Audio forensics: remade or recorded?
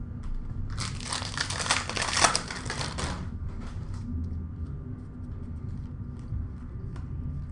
recorded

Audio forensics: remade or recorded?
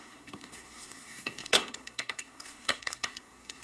remade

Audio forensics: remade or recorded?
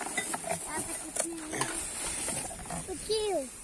recorded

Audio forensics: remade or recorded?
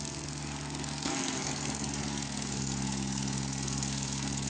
remade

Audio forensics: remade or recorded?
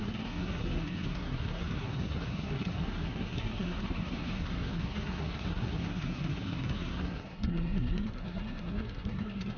remade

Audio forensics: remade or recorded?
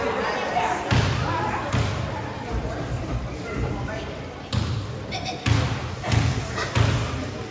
recorded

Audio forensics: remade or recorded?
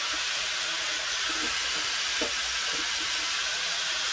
recorded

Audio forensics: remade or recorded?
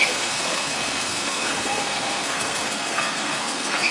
remade